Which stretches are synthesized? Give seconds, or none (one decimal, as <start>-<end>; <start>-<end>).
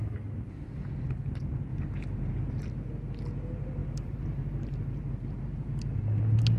1.7-2.3